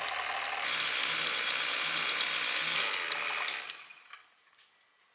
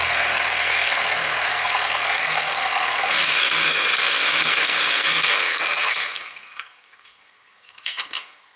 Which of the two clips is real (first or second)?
first